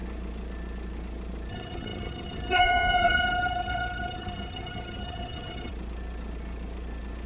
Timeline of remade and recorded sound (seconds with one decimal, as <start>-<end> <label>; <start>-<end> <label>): 0.0-1.5 recorded; 1.5-5.7 remade; 5.7-7.3 recorded